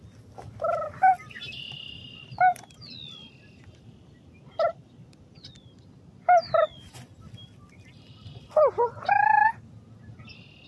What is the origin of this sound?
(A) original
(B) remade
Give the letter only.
A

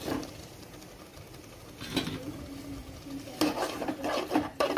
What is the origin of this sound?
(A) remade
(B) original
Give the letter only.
B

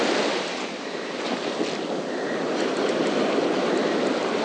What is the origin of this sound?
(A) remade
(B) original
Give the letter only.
B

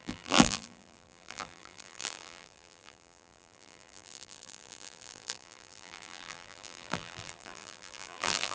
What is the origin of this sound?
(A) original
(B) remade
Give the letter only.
B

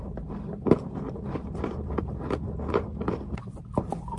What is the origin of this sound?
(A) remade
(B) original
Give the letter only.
A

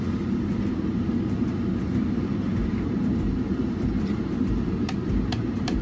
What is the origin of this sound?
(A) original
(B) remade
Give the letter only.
B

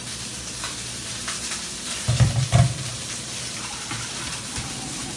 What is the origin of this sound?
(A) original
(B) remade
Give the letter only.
B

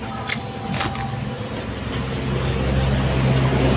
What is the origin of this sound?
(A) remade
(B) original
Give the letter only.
B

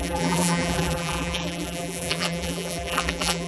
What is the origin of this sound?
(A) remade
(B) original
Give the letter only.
A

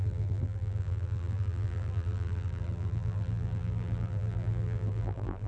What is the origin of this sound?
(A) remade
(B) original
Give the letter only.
A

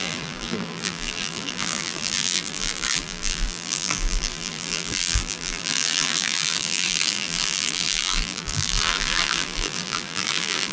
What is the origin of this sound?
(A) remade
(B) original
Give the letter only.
A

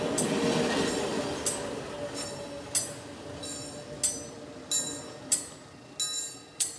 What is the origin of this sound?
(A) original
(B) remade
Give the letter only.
A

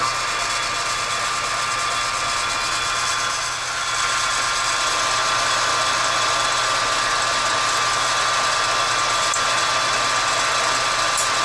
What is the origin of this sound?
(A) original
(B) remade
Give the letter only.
A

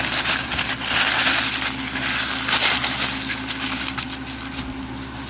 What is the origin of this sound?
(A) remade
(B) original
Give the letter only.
B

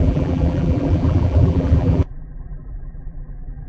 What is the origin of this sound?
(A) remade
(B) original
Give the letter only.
A